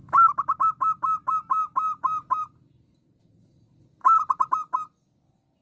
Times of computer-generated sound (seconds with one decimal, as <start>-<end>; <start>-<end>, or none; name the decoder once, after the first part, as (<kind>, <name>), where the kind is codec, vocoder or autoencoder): none